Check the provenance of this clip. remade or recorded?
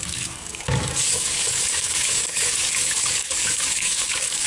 remade